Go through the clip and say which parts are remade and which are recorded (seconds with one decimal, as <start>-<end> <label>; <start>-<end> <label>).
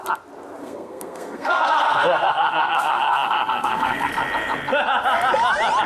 0.0-0.6 recorded; 0.6-4.1 remade; 4.1-5.9 recorded